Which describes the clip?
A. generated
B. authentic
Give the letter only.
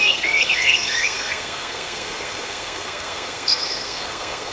A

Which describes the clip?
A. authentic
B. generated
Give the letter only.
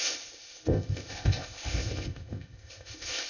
B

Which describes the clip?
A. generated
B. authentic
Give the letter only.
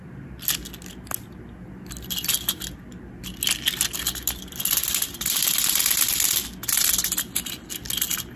B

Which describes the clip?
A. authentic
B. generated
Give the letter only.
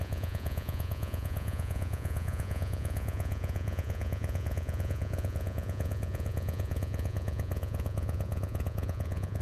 B